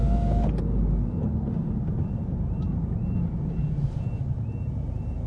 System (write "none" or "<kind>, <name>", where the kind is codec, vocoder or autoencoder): none